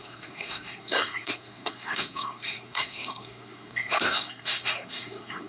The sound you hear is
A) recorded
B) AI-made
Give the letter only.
B